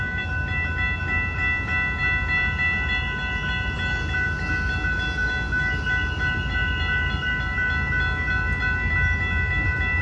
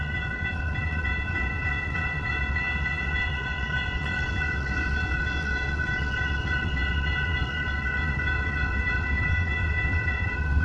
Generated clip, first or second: second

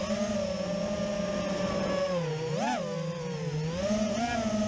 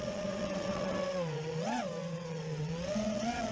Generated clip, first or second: second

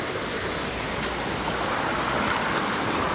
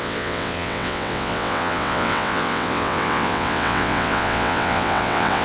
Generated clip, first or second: second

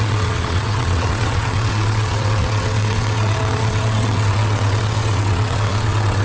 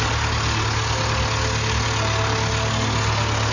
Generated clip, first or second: first